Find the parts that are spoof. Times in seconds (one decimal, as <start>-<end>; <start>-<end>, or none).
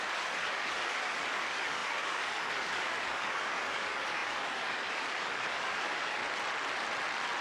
0.0-6.2